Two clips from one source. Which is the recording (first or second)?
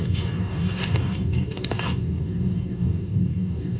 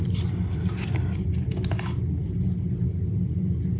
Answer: second